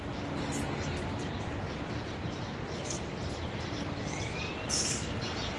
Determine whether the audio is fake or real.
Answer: real